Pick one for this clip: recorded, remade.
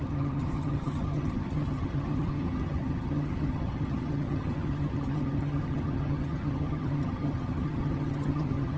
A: remade